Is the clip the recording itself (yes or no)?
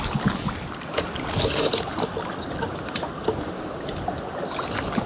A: yes